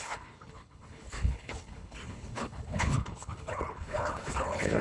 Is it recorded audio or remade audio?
remade